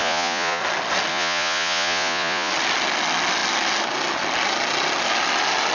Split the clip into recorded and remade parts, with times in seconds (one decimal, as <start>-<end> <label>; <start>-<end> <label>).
0.0-0.6 remade; 0.6-1.1 recorded; 1.1-2.5 remade; 2.5-5.7 recorded